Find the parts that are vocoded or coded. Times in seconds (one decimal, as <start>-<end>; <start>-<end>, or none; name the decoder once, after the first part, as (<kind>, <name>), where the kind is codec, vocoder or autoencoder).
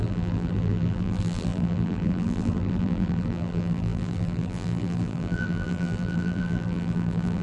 0.0-7.4 (vocoder, BigVGAN v2)